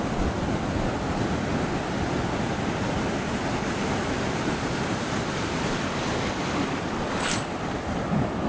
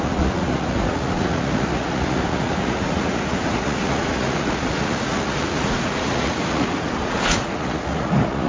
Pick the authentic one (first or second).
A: first